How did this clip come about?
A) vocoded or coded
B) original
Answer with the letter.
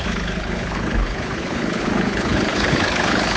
A